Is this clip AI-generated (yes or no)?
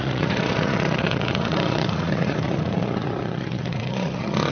yes